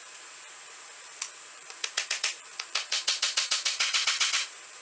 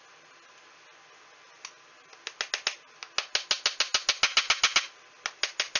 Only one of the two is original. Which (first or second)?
second